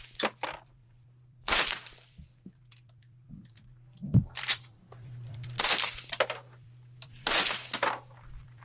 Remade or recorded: remade